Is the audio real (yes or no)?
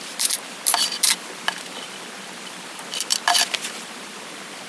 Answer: no